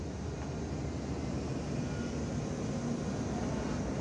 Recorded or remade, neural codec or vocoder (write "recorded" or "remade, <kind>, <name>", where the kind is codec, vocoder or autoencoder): recorded